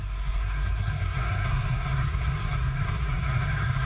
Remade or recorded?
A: remade